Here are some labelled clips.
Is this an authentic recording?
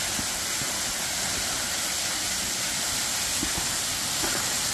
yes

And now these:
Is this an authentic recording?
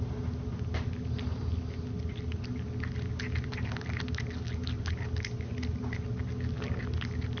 yes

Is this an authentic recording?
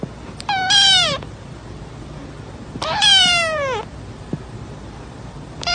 no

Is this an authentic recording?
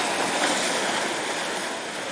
yes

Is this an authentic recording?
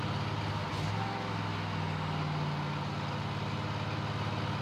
yes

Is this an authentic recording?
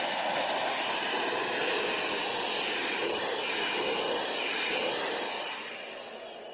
yes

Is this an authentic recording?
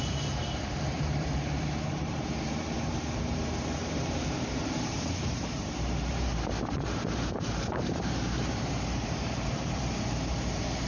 no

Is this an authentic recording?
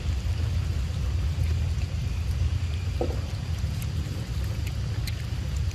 yes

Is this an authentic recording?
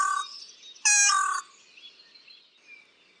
yes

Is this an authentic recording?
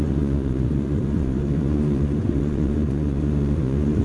no